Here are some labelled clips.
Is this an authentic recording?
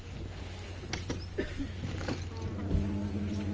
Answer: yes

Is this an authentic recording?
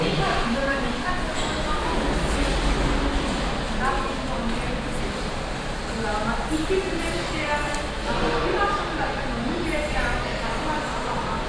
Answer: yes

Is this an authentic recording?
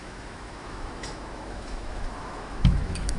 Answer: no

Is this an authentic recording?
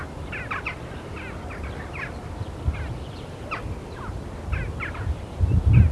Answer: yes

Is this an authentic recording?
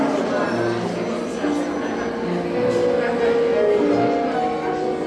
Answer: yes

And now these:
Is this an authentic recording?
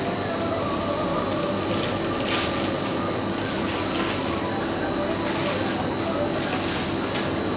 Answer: yes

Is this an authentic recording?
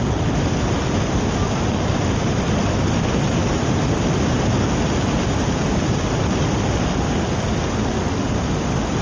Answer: yes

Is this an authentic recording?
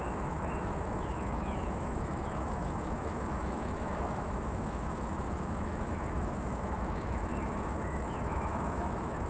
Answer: no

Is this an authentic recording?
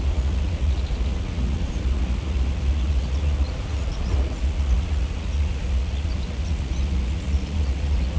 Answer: no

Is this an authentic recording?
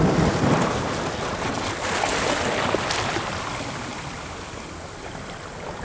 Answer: yes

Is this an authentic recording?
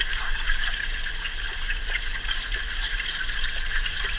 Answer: yes